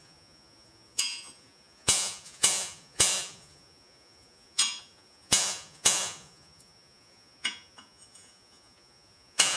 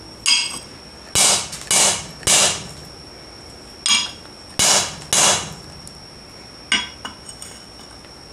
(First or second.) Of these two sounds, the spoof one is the first